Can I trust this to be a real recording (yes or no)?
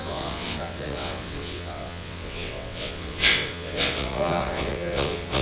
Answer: no